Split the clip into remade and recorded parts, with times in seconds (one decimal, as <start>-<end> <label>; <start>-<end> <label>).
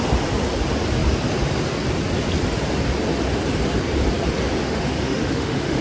0.0-4.6 recorded; 4.6-5.8 remade